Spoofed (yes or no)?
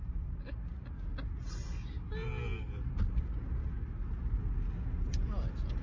no